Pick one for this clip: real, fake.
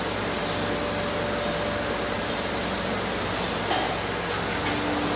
real